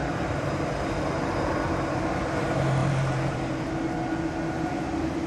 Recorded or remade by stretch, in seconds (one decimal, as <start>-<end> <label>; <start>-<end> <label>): 0.0-0.8 remade; 0.8-2.8 recorded; 2.8-3.6 remade; 3.6-5.3 recorded